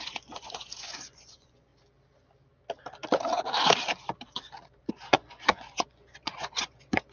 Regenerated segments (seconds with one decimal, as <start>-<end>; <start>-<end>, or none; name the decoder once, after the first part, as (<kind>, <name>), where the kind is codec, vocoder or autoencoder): 0.0-1.7 (vocoder, Vocos); 4.9-7.1